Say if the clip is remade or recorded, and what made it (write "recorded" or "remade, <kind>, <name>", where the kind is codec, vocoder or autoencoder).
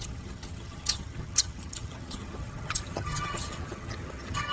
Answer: remade, vocoder, HiFi-GAN